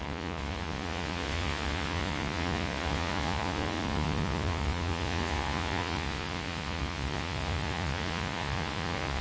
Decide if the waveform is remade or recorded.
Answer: remade